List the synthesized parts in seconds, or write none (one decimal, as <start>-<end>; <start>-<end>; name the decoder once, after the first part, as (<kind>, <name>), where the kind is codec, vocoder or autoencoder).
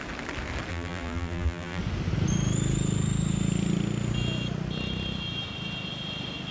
0.7-1.8 (vocoder, BigVGAN v2)